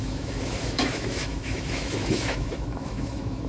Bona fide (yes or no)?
no